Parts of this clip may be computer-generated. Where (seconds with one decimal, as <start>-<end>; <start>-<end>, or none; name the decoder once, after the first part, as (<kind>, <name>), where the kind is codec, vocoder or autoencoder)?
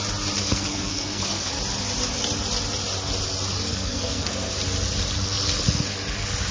0.4-1.5 (codec, SNAC); 3.7-4.5